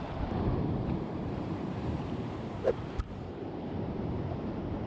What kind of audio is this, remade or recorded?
remade